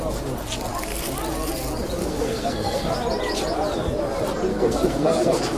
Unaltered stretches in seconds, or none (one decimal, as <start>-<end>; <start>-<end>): 0.0-2.0; 2.9-4.5